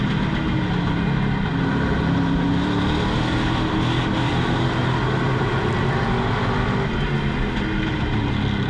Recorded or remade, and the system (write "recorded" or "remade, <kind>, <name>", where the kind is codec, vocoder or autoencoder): recorded